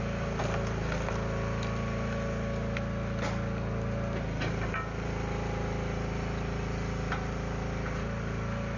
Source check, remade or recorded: recorded